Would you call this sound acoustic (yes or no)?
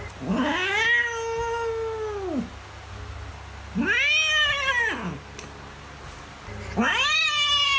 yes